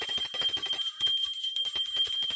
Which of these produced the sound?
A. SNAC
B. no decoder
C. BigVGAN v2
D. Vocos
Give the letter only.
C